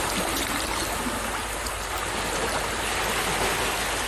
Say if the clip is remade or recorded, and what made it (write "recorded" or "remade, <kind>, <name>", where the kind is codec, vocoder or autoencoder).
recorded